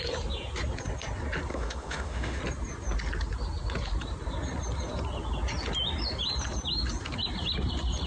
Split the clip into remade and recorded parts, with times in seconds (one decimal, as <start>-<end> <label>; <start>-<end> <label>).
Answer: 0.0-1.5 recorded; 1.5-2.4 remade; 2.4-8.1 recorded